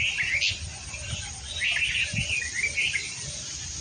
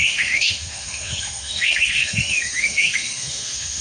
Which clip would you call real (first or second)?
first